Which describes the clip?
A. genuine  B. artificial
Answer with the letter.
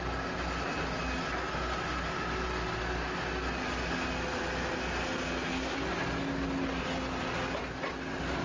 A